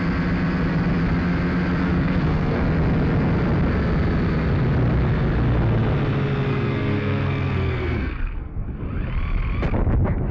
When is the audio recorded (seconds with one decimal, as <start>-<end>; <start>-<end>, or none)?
0.0-1.8; 2.6-6.5; 8.8-10.3